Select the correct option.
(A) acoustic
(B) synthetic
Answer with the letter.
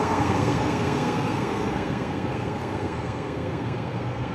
B